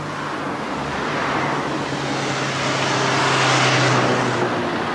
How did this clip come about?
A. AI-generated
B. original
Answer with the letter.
B